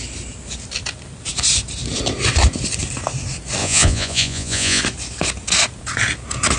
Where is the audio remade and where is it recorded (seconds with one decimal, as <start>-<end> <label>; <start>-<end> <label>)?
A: 0.0-3.6 recorded; 3.6-4.8 remade; 4.8-6.6 recorded